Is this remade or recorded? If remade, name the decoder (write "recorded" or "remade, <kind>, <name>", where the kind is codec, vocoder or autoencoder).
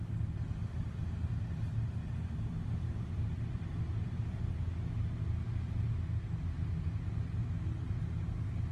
recorded